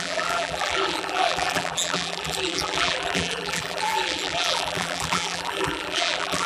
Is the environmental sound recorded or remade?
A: remade